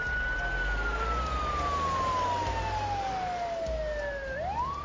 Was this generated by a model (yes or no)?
no